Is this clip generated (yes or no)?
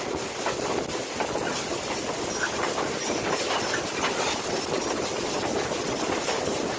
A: no